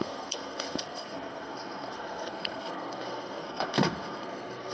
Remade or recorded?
remade